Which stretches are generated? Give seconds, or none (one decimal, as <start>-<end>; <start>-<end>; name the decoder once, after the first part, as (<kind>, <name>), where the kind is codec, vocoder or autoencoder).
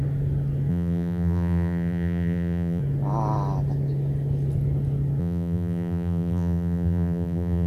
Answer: 0.7-2.8 (vocoder, BigVGAN v2); 5.2-7.7